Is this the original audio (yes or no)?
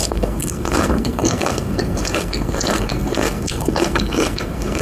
no